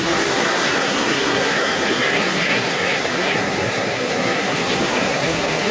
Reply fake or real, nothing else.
fake